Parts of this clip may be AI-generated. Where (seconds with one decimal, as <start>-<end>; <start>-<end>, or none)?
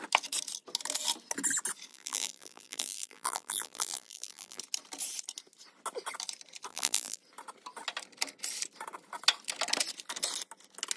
1.9-4.6; 6.7-7.2